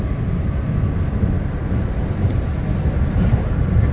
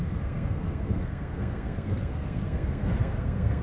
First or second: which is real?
first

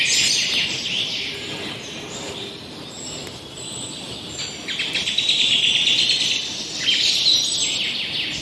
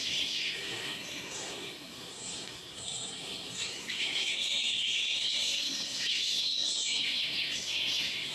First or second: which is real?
first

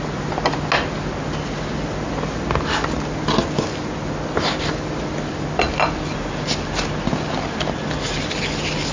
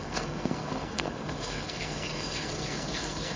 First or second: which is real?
first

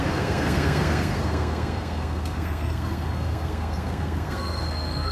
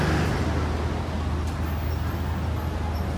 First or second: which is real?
second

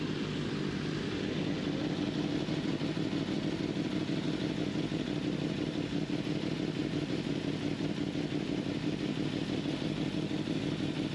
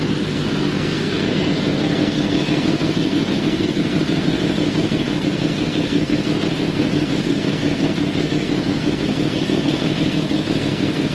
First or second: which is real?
first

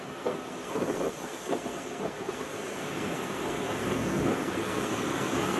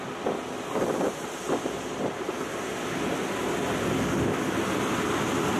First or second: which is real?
second